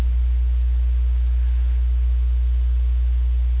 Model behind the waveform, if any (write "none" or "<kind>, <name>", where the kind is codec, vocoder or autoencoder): none